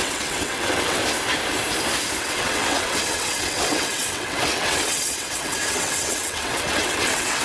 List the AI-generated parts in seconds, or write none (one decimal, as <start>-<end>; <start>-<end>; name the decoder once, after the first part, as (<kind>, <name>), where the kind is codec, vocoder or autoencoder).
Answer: 0.0-1.0 (vocoder, WaveNeXt); 2.2-7.4